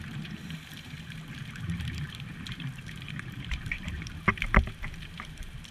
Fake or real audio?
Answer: fake